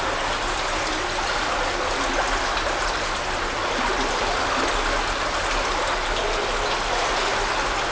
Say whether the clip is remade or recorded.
recorded